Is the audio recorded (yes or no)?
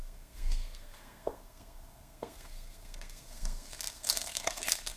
no